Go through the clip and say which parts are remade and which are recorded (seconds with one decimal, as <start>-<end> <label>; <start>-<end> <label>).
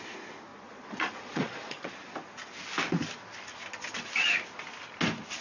0.0-0.5 recorded; 0.5-1.9 remade; 1.9-5.4 recorded